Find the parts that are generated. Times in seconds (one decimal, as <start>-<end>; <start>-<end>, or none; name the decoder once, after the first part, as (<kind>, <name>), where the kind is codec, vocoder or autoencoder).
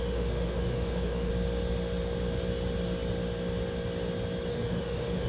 0.0-1.3 (autoencoder, DAC-VAE); 4.5-5.3